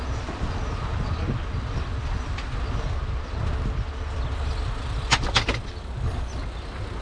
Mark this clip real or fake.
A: real